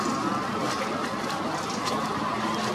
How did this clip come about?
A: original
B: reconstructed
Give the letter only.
A